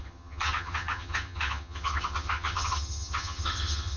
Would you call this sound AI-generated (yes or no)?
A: yes